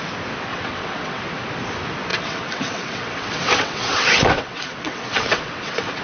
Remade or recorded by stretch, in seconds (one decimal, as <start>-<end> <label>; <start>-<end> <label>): 0.0-0.5 recorded; 0.5-1.2 remade; 1.2-2.1 recorded; 2.1-6.0 remade